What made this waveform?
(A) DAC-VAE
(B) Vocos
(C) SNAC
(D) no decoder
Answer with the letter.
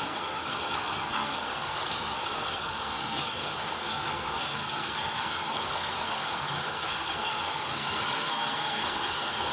C